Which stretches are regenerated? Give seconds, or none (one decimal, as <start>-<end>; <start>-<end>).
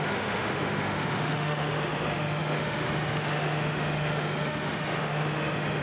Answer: 0.0-5.8